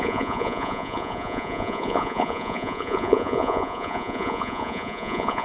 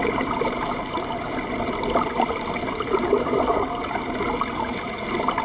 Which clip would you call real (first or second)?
second